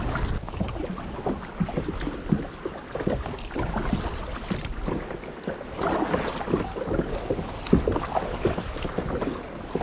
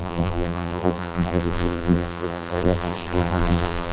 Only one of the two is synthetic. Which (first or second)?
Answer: second